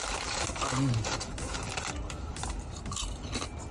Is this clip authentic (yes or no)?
yes